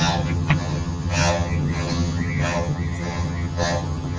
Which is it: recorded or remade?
remade